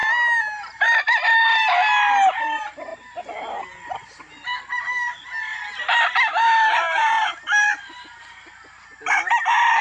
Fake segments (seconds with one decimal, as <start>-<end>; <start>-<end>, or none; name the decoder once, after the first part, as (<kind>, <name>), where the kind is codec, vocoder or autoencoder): none